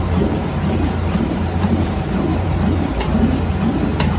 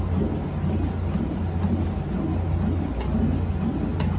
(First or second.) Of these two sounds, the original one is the second